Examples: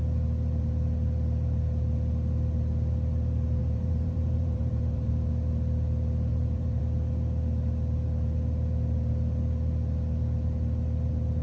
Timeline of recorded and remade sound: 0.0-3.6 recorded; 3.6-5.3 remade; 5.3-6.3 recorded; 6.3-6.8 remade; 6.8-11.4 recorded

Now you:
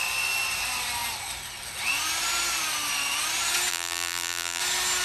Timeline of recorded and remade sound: 0.0-3.7 recorded; 3.7-4.6 remade; 4.6-5.0 recorded

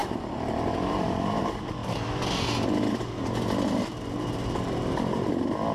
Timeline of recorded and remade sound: 0.0-1.8 remade; 1.8-3.8 recorded; 3.8-5.7 remade

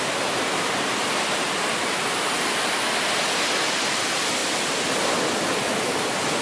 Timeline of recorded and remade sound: 0.0-6.4 recorded